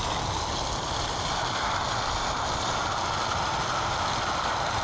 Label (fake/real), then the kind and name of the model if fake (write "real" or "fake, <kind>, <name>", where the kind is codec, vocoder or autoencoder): real